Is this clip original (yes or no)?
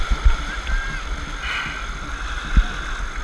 yes